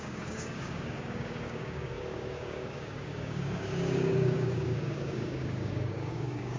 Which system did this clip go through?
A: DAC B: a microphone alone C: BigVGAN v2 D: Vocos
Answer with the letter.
A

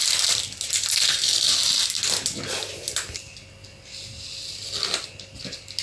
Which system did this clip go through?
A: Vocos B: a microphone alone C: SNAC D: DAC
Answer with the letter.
B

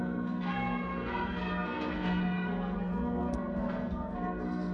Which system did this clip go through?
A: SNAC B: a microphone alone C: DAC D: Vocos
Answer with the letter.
A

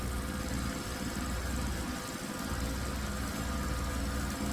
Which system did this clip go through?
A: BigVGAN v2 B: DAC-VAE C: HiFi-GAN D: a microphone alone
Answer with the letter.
D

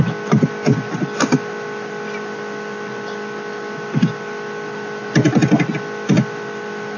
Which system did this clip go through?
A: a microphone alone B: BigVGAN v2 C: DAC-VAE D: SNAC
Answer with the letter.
A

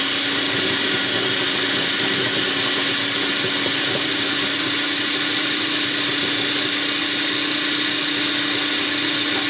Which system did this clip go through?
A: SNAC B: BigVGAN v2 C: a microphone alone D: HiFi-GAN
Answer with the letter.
C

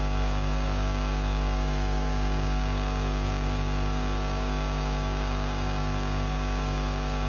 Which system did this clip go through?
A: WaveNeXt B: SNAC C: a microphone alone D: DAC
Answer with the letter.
D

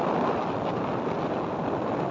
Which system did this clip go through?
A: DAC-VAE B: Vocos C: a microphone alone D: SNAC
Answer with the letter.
C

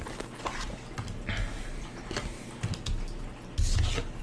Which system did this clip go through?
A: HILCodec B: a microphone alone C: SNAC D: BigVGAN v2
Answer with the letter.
B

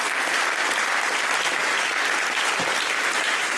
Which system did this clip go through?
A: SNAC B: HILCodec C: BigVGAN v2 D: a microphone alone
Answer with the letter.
D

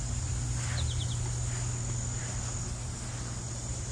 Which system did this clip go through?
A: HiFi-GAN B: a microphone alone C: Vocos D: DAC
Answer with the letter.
B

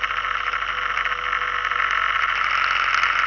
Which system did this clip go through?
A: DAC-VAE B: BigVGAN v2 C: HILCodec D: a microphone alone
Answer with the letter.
D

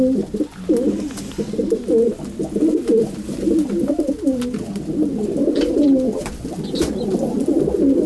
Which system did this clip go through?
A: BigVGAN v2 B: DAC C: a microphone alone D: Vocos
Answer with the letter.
C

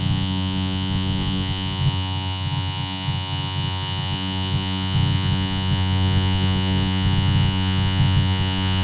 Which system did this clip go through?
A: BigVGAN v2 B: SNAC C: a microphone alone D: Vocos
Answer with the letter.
D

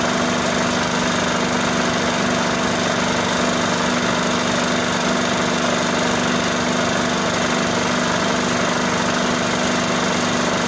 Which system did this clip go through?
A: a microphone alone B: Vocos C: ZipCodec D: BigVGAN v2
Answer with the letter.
A